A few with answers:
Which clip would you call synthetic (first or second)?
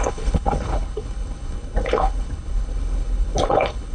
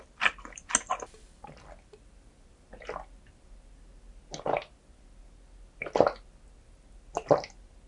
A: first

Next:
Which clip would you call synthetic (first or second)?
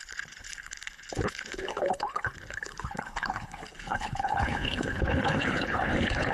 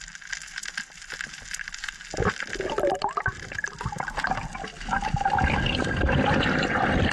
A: first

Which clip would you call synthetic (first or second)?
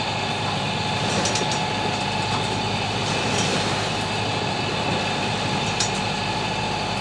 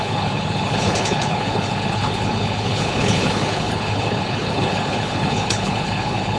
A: second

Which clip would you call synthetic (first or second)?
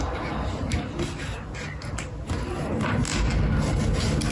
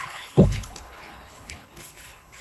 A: second